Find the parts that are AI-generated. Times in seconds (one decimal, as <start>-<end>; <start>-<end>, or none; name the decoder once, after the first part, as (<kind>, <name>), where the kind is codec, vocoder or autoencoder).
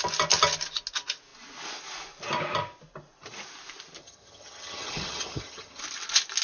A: 4.0-5.8 (vocoder, HiFi-GAN)